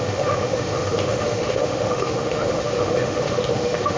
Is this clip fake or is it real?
fake